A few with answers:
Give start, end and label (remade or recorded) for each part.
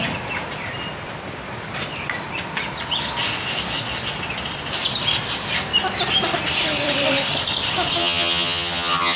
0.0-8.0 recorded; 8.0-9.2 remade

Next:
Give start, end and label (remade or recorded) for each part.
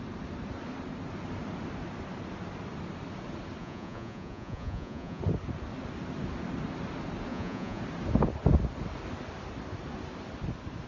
0.0-3.6 recorded; 3.6-5.2 remade; 5.2-7.3 recorded; 7.3-7.8 remade; 7.8-10.9 recorded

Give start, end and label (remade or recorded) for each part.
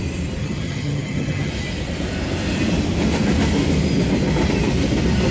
0.0-0.4 recorded; 0.4-1.5 remade; 1.5-5.3 recorded